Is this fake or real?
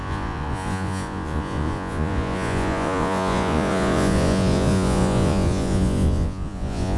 fake